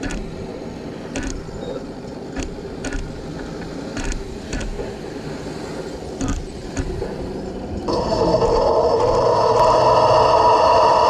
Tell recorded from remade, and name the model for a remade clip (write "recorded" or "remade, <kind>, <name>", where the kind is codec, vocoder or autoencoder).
recorded